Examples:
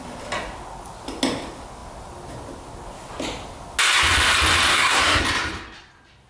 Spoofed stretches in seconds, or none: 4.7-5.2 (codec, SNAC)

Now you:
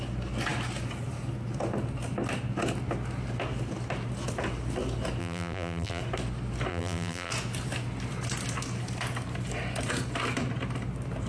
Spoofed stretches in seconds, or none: 5.2-6.0 (vocoder, BigVGAN v2); 6.7-7.3

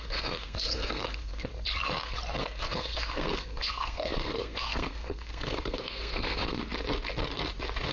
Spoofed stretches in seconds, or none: 0.0-1.5 (codec, SNAC); 2.4-6.6

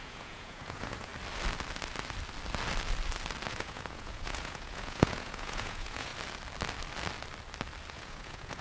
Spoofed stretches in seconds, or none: 0.0-1.1 (vocoder, Vocos); 3.5-6.1; 7.9-8.6